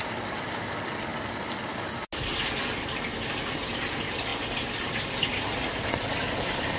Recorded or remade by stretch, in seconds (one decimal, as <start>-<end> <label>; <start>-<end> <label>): 0.0-6.8 recorded